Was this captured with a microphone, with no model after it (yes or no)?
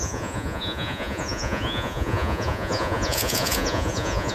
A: no